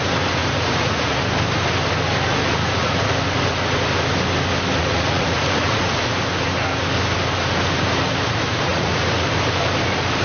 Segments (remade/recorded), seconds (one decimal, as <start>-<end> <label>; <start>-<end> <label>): 0.0-0.4 recorded; 0.4-1.2 remade; 1.2-2.3 recorded; 2.3-3.1 remade; 3.1-4.8 recorded; 4.8-6.0 remade; 6.0-8.7 recorded; 8.7-9.3 remade; 9.3-10.2 recorded